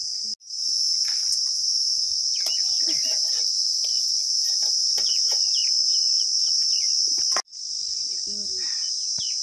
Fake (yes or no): no